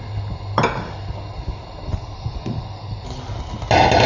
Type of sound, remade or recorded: recorded